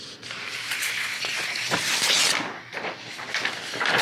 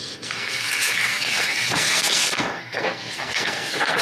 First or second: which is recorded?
first